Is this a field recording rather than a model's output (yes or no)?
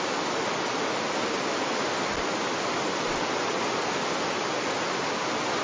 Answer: yes